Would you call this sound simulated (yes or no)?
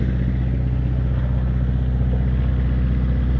no